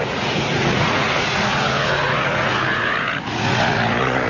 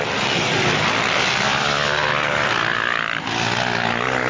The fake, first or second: first